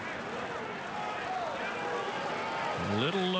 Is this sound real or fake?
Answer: real